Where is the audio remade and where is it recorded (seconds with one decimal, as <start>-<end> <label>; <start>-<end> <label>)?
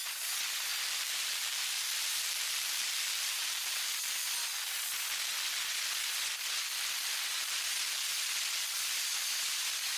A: 0.0-0.7 recorded; 0.7-4.2 remade; 4.2-10.0 recorded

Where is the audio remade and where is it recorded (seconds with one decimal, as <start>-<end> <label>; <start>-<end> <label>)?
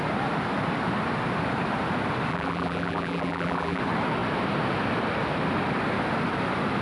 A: 0.0-2.3 recorded; 2.3-3.8 remade; 3.8-6.8 recorded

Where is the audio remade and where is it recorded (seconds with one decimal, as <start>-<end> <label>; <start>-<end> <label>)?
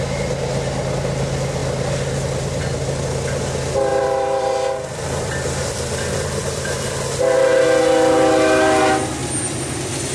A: 0.0-3.9 recorded; 3.9-7.0 remade; 7.0-10.1 recorded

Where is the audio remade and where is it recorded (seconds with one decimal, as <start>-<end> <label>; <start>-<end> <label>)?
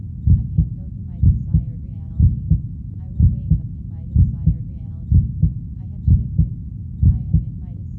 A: 0.0-8.0 recorded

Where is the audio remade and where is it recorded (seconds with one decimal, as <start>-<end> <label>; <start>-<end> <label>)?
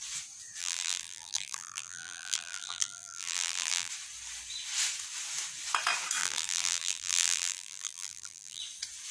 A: 0.0-0.6 recorded; 0.6-3.9 remade; 3.9-6.2 recorded; 6.2-8.6 remade; 8.6-9.1 recorded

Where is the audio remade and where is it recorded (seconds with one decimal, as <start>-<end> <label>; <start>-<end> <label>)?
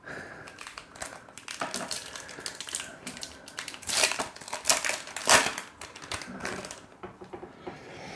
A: 0.0-2.9 recorded; 2.9-4.2 remade; 4.2-8.2 recorded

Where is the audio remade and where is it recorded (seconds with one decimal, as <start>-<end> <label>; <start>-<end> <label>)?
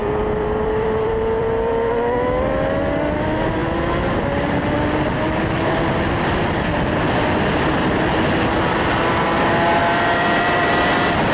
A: 0.0-2.6 remade; 2.6-8.7 recorded; 8.7-9.4 remade; 9.4-9.8 recorded; 9.8-10.7 remade; 10.7-11.3 recorded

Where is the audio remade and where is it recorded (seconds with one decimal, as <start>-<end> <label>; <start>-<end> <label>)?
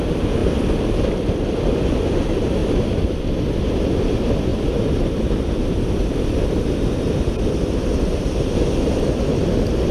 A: 0.0-0.4 recorded; 0.4-1.8 remade; 1.8-2.6 recorded; 2.6-3.7 remade; 3.7-4.5 recorded; 4.5-7.3 remade; 7.3-9.9 recorded